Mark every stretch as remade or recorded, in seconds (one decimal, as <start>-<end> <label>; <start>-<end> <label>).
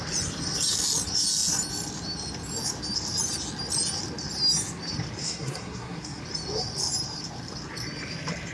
0.0-5.2 recorded; 5.2-6.2 remade; 6.2-8.5 recorded